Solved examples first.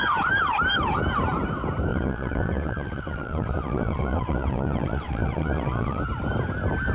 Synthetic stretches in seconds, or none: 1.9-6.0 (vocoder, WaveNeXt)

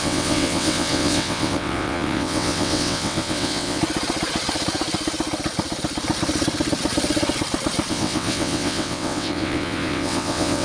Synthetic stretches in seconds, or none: 0.0-3.8 (vocoder, WaveNeXt); 7.9-10.6

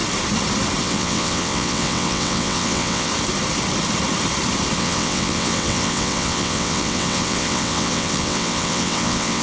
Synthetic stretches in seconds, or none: 0.8-3.1 (vocoder, WaveNeXt); 4.8-9.4

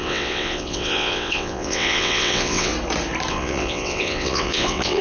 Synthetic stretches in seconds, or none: 0.0-2.7 (vocoder, WaveNeXt); 3.3-5.0